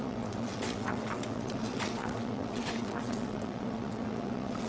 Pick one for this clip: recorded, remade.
remade